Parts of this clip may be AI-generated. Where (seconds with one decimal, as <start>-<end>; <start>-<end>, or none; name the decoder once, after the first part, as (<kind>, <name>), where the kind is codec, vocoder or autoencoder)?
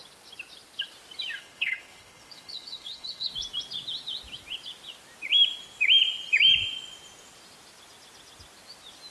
1.4-3.3 (codec, HILCodec)